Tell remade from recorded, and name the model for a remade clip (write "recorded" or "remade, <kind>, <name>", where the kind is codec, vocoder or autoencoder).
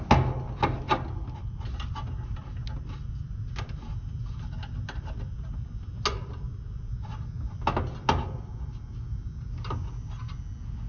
recorded